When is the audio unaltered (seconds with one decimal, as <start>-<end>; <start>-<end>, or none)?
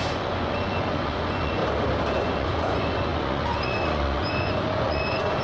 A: 1.6-2.2